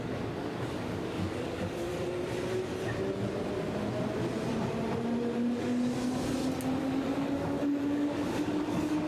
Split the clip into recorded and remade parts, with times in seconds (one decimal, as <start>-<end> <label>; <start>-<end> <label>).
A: 0.0-1.9 remade; 1.9-6.8 recorded; 6.8-9.1 remade